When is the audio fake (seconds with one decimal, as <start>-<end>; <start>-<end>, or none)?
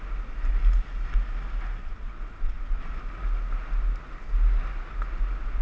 1.8-2.8